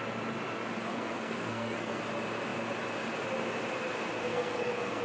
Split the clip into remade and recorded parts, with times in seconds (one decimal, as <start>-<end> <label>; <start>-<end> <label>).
0.0-0.9 recorded; 0.9-2.0 remade; 2.0-4.2 recorded; 4.2-5.0 remade